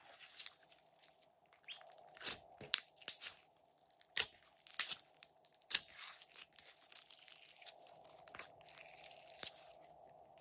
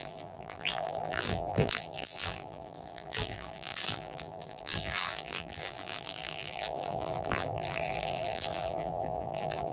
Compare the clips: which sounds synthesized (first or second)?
second